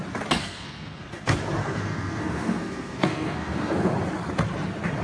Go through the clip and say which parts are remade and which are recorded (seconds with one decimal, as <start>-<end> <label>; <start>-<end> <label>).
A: 0.0-0.4 recorded; 0.4-1.2 remade; 1.2-1.6 recorded; 1.6-3.9 remade; 3.9-5.0 recorded